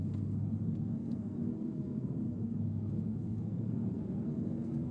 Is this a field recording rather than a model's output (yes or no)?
no